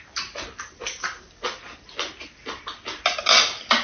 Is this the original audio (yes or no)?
yes